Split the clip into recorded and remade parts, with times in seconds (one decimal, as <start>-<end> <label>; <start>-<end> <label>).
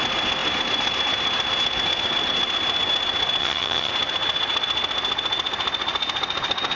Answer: 0.0-3.4 recorded; 3.4-3.9 remade; 3.9-6.8 recorded